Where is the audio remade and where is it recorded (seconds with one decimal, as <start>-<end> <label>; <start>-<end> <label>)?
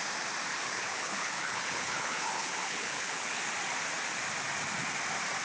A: 0.0-0.5 recorded; 0.5-3.4 remade; 3.4-5.4 recorded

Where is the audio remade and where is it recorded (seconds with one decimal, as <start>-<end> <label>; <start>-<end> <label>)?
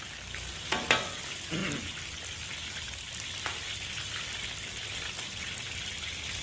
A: 0.0-6.4 recorded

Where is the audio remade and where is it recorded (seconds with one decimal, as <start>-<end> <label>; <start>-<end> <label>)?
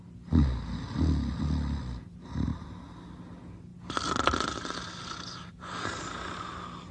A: 0.0-6.9 recorded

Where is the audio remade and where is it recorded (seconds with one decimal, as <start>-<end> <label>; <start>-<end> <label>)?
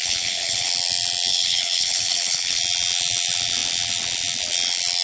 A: 0.0-0.7 remade; 0.7-1.3 recorded; 1.3-2.6 remade; 2.6-5.0 recorded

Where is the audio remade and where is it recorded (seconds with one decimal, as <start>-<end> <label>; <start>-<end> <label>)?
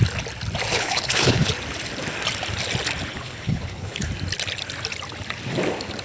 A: 0.0-0.7 recorded; 0.7-1.5 remade; 1.5-3.1 recorded; 3.1-4.1 remade; 4.1-6.0 recorded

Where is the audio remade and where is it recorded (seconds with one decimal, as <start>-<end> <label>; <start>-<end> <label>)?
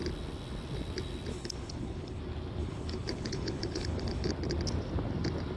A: 0.0-1.3 recorded; 1.3-2.2 remade; 2.2-2.6 recorded; 2.6-4.3 remade; 4.3-5.6 recorded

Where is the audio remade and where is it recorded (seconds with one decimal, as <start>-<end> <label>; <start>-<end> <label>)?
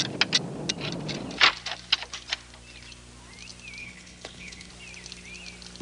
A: 0.0-3.8 recorded; 3.8-4.7 remade; 4.7-5.8 recorded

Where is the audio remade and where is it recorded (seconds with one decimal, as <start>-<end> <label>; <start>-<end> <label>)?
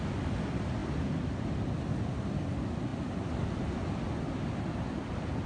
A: 0.0-5.5 recorded